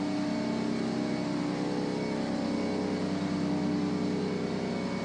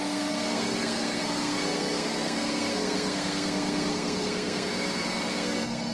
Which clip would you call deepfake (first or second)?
second